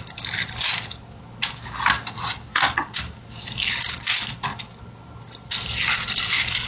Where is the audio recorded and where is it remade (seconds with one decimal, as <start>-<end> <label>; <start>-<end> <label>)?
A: 0.0-2.5 recorded; 2.5-3.0 remade; 3.0-6.7 recorded